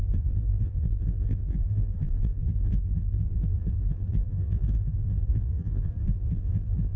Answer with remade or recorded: remade